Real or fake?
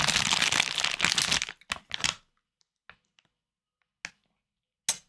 real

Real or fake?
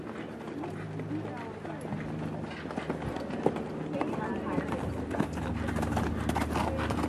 real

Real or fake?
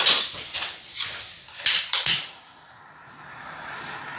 fake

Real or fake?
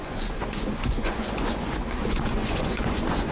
fake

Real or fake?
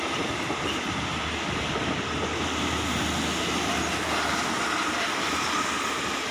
real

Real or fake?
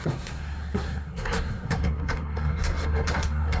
fake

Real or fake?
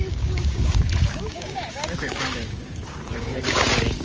fake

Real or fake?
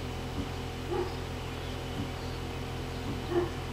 real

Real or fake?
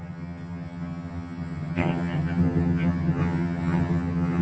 fake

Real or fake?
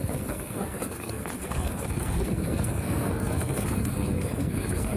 fake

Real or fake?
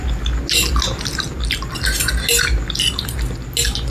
real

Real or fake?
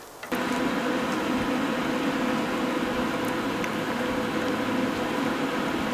real